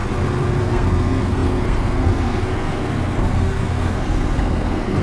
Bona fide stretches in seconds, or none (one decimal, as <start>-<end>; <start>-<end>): 0.0-0.6